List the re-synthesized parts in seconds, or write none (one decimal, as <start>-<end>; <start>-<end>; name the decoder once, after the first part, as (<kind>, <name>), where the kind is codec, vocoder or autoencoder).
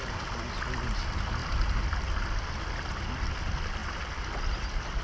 none